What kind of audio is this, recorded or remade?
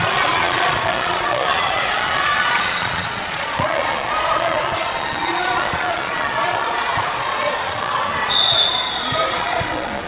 remade